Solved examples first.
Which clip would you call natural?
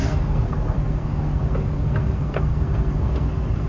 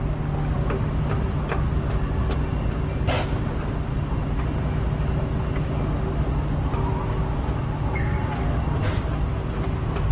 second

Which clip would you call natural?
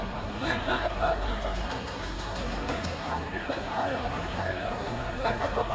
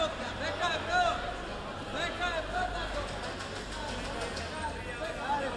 second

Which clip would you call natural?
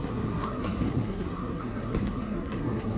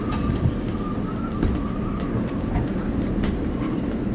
second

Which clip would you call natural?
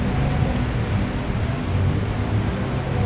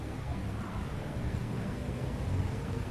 first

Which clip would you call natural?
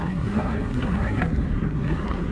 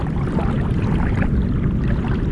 second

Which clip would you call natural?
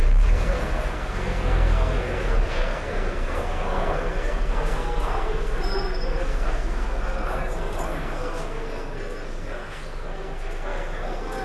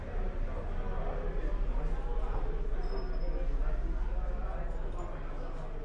second